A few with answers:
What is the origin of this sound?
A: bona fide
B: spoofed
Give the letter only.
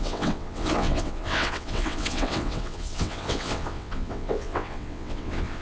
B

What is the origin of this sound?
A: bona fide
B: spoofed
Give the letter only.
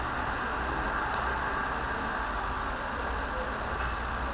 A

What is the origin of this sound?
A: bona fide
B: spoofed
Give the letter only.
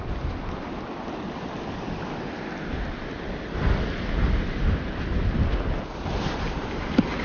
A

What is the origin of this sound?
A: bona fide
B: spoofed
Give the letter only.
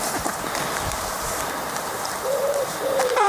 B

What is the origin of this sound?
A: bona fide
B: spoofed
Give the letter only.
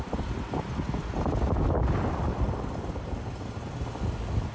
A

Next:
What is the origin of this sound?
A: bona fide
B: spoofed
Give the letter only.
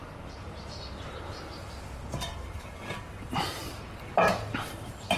B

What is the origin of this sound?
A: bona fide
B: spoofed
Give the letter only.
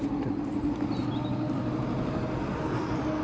A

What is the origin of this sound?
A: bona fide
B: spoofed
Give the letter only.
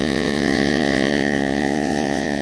B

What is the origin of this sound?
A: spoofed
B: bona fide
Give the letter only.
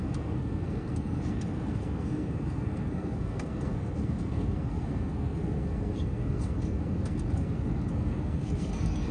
A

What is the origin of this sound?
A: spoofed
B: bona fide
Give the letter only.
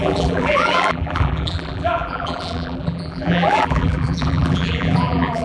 A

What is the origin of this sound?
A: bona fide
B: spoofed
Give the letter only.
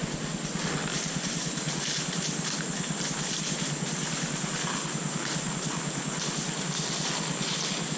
A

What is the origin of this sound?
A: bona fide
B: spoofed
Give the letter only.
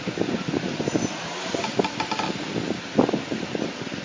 A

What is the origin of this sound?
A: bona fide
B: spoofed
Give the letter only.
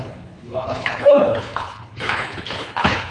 B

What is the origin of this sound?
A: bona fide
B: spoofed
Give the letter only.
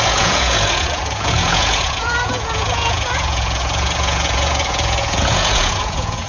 B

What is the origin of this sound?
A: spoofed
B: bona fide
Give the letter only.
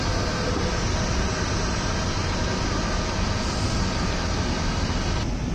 B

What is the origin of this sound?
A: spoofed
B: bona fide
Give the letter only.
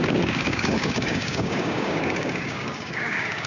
A